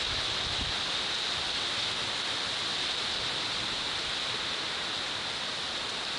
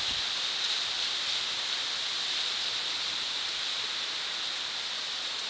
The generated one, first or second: second